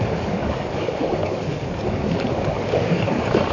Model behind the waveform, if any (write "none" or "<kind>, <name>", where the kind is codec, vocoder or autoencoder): codec, DAC